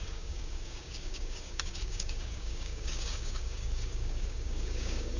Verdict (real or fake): fake